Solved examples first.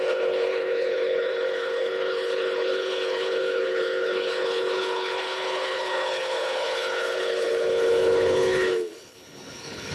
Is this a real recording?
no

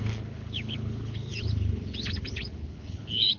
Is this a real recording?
no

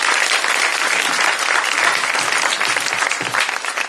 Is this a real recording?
yes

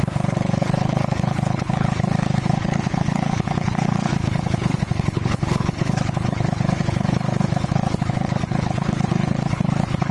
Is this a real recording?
no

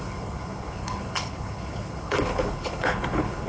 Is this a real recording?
no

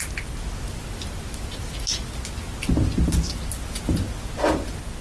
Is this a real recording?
yes